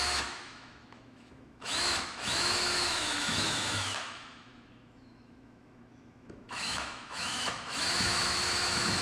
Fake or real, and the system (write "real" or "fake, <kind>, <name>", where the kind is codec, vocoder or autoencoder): fake, autoencoder, DAC-VAE